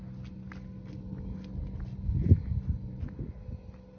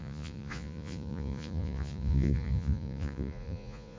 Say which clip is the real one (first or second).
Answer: first